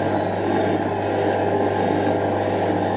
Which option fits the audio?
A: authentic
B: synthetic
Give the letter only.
A